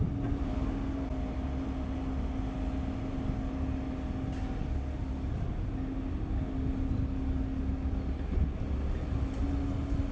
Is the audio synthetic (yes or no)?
no